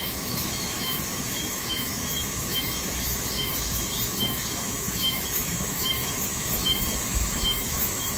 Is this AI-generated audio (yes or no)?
yes